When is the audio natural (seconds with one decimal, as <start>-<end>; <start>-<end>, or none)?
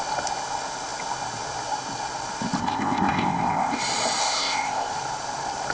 0.0-2.6; 3.8-4.2; 4.9-5.7